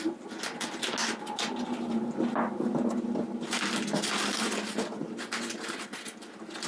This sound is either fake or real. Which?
real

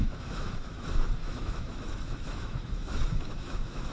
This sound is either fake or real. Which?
fake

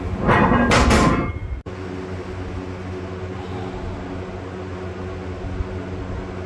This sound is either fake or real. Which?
real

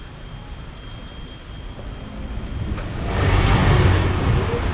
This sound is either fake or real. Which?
real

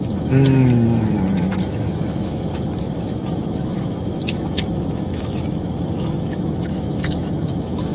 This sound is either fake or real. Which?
fake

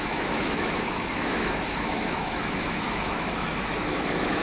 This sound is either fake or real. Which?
fake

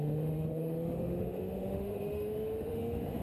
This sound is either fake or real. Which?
fake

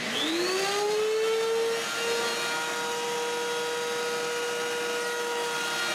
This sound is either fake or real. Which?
real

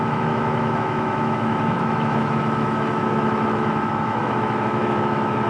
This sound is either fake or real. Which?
fake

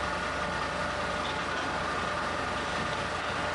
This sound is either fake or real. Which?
real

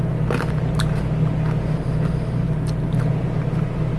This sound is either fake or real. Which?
real